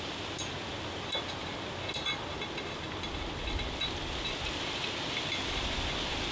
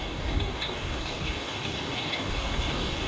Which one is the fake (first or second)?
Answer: second